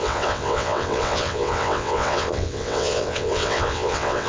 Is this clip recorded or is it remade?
remade